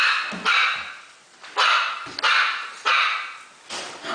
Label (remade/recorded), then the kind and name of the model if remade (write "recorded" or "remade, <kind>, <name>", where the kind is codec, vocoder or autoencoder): recorded